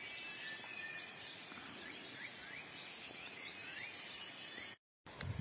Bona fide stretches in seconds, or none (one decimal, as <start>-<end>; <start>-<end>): 0.0-0.7; 3.9-5.4

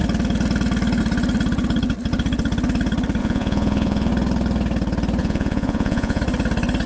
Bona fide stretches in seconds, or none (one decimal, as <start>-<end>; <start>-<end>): 0.0-3.2; 4.1-5.2; 6.2-6.9

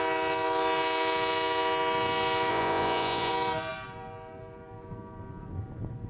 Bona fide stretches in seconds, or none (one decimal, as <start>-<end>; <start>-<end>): 0.0-2.5; 3.3-6.1

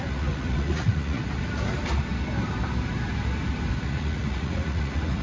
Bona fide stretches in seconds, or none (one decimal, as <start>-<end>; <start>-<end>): 1.2-3.8

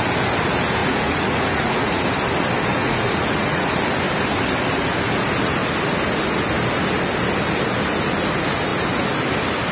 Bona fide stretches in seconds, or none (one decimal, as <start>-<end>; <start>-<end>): 0.0-0.8; 2.0-2.7; 3.7-9.7